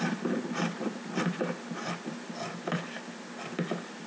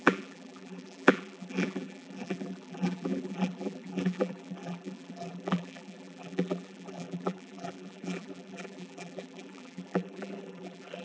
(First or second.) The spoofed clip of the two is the second